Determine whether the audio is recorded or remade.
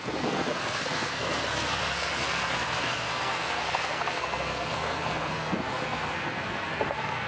remade